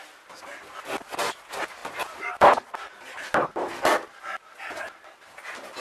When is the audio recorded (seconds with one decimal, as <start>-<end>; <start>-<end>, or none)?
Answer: 0.0-5.8